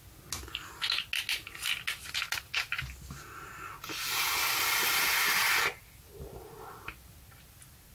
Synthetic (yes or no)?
no